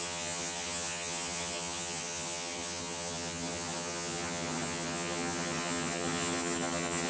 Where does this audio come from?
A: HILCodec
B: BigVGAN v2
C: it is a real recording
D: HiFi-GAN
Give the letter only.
D